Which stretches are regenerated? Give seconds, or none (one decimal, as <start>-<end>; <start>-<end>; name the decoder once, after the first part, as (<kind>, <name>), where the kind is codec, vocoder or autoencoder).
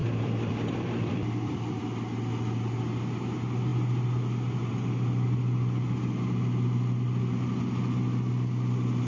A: 0.0-1.8 (vocoder, BigVGAN v2)